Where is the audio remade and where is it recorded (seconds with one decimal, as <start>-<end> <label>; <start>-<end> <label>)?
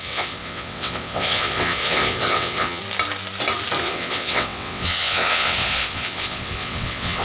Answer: 0.0-2.8 remade; 2.8-3.8 recorded; 3.8-7.2 remade